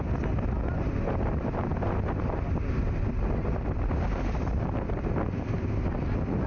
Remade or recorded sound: recorded